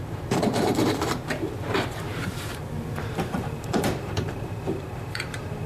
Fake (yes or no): yes